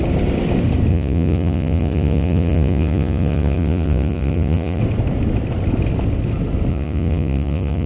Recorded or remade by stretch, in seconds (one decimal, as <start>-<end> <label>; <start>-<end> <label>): 0.0-0.9 recorded; 0.9-4.8 remade; 4.8-6.7 recorded; 6.7-7.9 remade